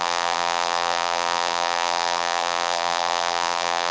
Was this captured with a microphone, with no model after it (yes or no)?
no